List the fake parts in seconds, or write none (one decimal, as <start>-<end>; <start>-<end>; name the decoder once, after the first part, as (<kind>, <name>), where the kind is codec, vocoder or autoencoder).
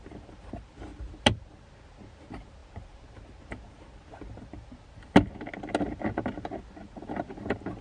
none